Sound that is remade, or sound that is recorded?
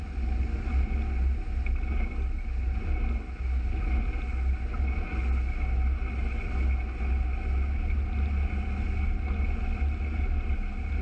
recorded